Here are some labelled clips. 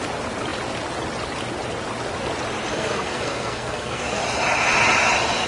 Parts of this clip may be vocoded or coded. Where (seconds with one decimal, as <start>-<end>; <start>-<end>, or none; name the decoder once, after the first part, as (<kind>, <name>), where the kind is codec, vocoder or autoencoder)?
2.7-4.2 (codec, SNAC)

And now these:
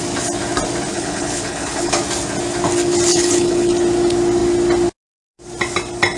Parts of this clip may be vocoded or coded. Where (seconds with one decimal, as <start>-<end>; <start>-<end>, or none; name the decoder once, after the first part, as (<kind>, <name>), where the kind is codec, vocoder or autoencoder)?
0.9-1.9 (codec, HILCodec); 3.1-3.7

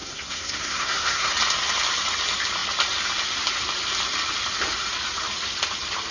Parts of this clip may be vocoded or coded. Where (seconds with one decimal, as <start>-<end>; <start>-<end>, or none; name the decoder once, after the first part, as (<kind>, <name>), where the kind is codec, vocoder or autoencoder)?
0.0-1.3 (codec, SNAC)

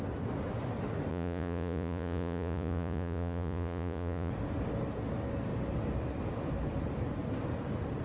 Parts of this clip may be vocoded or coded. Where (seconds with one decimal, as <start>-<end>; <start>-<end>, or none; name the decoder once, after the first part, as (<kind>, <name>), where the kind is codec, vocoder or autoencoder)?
1.1-4.3 (vocoder, Vocos)